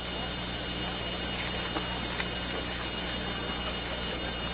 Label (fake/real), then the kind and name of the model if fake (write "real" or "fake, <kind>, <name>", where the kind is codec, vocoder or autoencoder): real